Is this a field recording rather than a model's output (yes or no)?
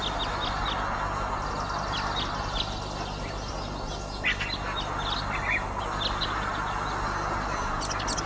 yes